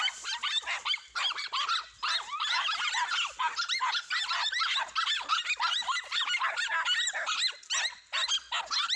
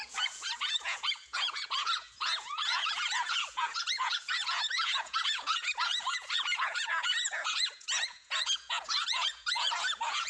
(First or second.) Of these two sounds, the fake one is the second